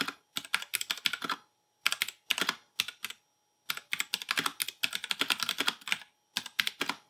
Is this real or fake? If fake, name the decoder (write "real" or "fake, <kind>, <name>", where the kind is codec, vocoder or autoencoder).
real